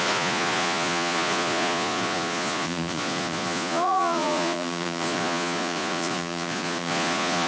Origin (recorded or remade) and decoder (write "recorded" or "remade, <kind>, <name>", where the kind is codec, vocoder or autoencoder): remade, vocoder, Vocos